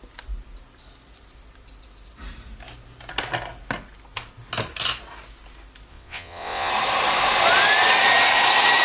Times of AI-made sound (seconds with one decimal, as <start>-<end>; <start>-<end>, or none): 5.9-6.7